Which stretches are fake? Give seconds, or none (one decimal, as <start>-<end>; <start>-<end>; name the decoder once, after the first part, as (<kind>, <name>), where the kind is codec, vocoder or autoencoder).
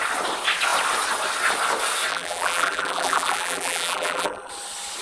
2.1-4.5 (vocoder, BigVGAN v2)